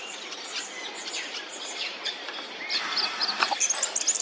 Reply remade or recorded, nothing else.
recorded